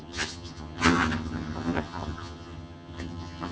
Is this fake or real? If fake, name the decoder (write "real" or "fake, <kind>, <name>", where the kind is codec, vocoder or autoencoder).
fake, vocoder, HiFi-GAN